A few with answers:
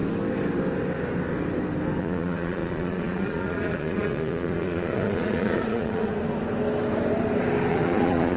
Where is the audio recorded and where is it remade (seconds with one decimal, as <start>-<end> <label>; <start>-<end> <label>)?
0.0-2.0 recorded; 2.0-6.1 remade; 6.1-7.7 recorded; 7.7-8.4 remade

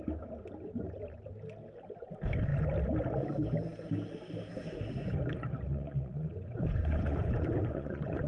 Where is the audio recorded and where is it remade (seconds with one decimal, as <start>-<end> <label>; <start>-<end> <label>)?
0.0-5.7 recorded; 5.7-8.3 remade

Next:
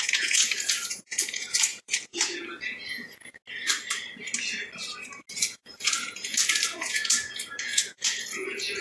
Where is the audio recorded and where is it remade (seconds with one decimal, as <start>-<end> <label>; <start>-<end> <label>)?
0.0-3.4 remade; 3.4-5.5 recorded; 5.5-8.8 remade

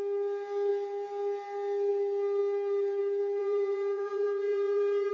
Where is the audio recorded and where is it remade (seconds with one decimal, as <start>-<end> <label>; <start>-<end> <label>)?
0.0-3.4 recorded; 3.4-5.1 remade

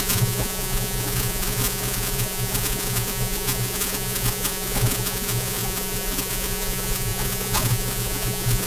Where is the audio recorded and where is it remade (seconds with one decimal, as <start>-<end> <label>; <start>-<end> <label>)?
0.0-8.7 remade

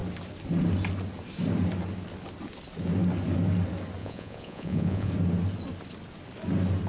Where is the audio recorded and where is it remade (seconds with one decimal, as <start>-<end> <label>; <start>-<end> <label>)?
0.0-4.0 recorded; 4.0-5.1 remade; 5.1-6.9 recorded